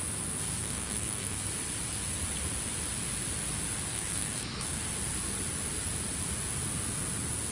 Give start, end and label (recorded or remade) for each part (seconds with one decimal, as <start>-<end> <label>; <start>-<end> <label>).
0.0-0.6 recorded; 0.6-1.4 remade; 1.4-3.9 recorded; 3.9-4.8 remade; 4.8-7.5 recorded